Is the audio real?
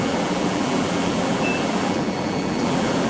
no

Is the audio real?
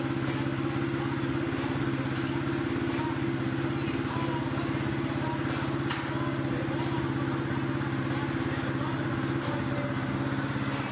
yes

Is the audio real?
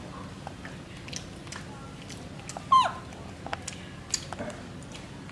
yes